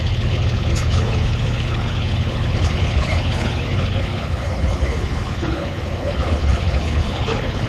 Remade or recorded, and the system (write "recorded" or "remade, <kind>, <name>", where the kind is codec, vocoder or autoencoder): remade, codec, HILCodec